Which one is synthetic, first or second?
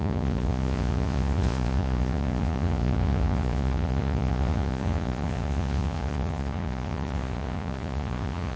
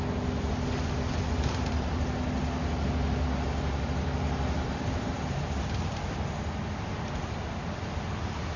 first